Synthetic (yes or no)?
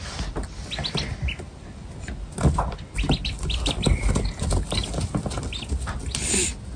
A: no